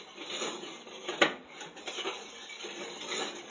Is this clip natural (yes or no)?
yes